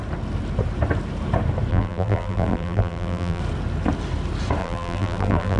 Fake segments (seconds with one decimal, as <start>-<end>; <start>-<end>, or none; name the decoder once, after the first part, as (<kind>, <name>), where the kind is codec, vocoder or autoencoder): 1.7-3.4 (vocoder, BigVGAN v2); 4.6-5.6